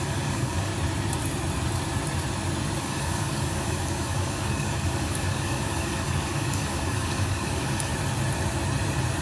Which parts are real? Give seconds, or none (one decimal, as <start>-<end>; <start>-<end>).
0.7-2.8; 7.9-9.2